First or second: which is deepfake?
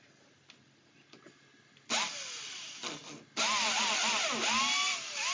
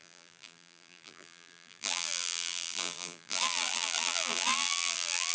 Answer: second